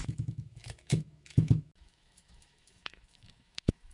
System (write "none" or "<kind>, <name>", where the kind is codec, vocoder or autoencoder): autoencoder, DAC-VAE